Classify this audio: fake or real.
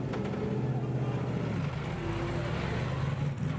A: real